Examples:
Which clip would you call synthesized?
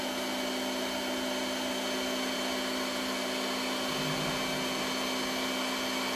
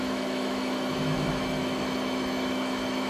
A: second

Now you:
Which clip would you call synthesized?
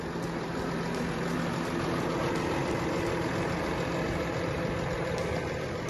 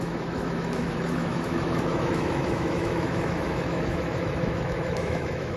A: second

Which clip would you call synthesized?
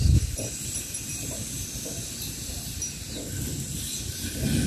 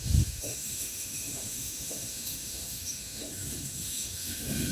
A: second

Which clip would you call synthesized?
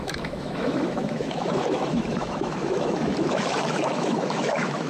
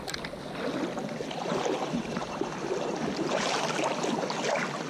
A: first